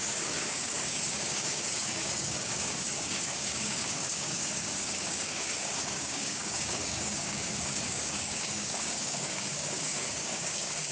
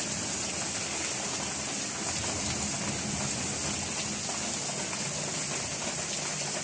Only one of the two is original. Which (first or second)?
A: second